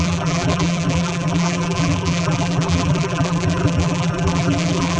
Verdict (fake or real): fake